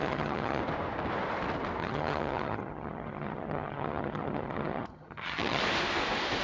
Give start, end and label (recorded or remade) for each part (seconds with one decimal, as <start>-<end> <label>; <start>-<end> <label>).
0.0-0.6 remade; 0.6-1.8 recorded; 1.8-5.6 remade; 5.6-6.4 recorded